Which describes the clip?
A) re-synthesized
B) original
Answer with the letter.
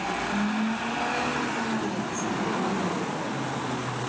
B